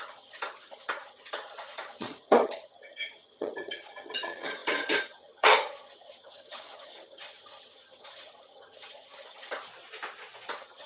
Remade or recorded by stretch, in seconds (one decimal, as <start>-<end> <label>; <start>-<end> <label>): 0.0-9.7 remade; 9.7-10.5 recorded; 10.5-10.9 remade